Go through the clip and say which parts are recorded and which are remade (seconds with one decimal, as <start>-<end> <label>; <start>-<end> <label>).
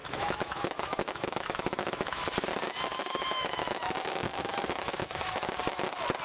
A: 0.0-2.2 remade; 2.2-2.9 recorded; 2.9-5.5 remade; 5.5-6.2 recorded